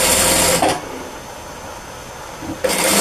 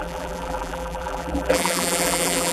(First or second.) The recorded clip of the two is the first